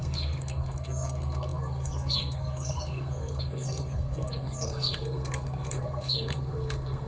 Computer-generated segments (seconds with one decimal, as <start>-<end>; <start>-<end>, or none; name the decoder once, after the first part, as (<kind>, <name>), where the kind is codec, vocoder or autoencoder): 0.0-7.1 (codec, SNAC)